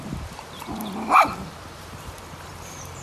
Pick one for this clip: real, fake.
fake